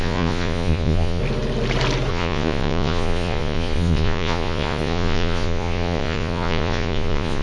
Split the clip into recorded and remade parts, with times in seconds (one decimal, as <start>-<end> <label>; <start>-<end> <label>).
0.0-1.2 remade; 1.2-2.1 recorded; 2.1-7.4 remade